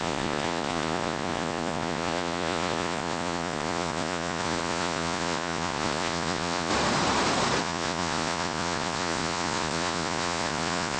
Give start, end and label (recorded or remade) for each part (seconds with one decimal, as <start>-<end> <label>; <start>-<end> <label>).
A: 0.0-6.7 remade; 6.7-7.6 recorded; 7.6-11.0 remade